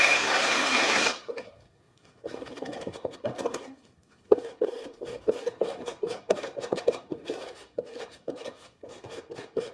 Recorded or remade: remade